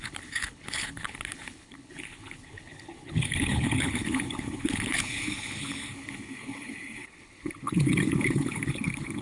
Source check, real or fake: fake